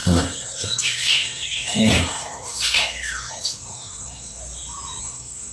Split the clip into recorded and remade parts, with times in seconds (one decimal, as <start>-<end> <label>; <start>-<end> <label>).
0.0-4.4 remade; 4.4-5.0 recorded; 5.0-5.5 remade